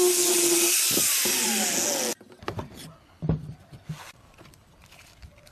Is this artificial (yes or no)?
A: no